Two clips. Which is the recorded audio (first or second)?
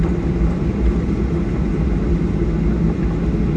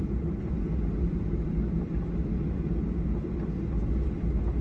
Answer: first